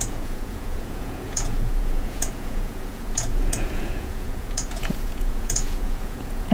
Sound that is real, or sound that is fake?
fake